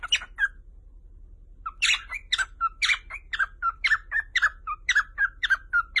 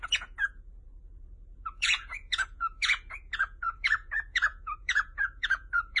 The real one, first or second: first